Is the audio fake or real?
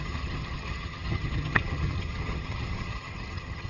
fake